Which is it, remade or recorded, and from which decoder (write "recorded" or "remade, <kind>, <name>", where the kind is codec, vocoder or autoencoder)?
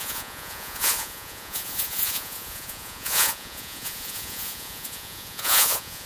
remade, vocoder, Vocos